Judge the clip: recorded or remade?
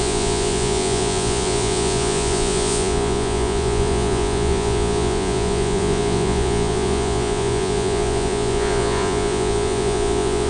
remade